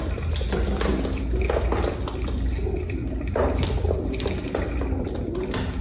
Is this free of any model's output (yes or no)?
no